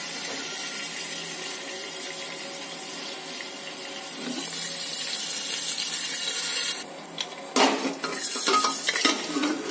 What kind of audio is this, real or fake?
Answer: real